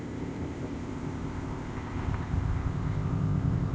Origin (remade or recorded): remade